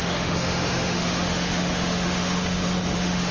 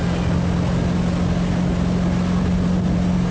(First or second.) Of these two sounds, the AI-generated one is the first